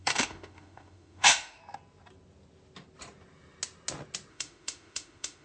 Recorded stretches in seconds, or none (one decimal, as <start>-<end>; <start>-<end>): 1.6-4.3